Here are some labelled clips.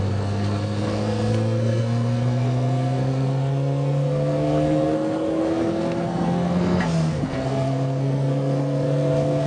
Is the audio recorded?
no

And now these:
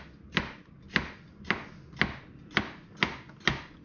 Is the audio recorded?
yes